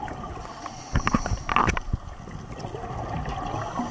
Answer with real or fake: real